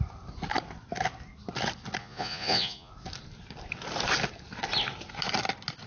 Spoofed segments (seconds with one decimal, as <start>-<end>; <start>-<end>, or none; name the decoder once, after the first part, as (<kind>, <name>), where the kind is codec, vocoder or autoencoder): 2.0-2.9 (vocoder, Vocos)